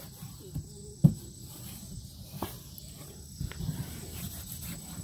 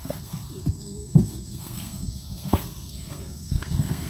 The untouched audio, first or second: first